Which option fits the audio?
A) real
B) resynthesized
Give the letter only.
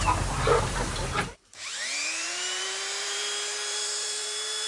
B